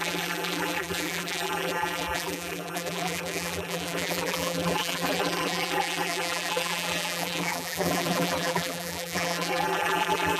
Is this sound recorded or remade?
remade